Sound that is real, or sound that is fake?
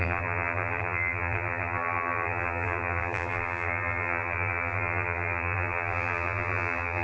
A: fake